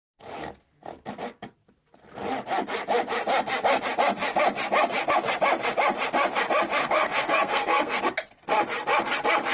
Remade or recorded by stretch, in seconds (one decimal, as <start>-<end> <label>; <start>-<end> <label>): 0.0-6.8 recorded; 6.8-8.0 remade; 8.0-9.5 recorded